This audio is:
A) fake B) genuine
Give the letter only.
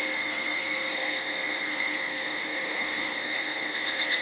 A